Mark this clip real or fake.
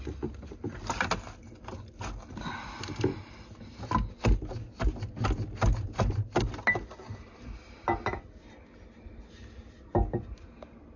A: real